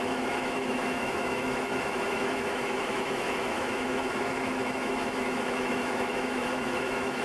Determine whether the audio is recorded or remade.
remade